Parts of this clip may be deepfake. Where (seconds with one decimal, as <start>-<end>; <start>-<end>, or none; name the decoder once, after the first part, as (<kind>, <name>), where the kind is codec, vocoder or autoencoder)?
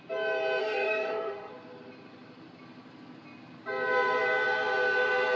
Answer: 0.6-1.5 (autoencoder, DAC-VAE)